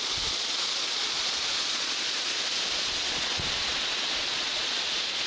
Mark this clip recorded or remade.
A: remade